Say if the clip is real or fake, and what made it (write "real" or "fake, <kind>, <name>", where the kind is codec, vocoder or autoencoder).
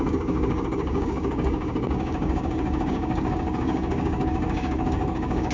fake, codec, DAC